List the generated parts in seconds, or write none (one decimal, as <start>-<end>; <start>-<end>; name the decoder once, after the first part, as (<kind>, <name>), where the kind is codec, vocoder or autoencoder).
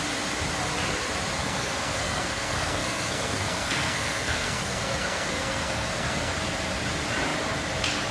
1.4-6.3 (codec, SNAC)